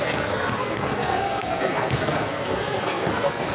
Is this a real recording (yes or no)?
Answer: no